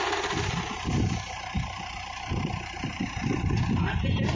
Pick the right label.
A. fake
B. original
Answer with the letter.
A